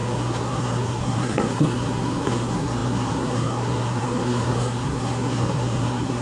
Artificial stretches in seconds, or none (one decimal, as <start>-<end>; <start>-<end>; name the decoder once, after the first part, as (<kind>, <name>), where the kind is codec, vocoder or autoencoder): 0.0-6.2 (codec, SNAC)